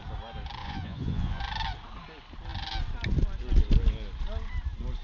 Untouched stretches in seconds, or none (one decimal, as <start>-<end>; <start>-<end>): 0.0-0.6; 1.4-5.0